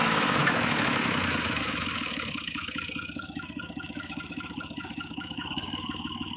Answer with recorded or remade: remade